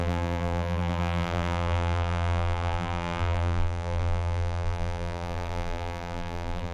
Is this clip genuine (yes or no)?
no